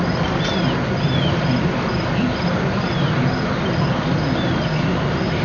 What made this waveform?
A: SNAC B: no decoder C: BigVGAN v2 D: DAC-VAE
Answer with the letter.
B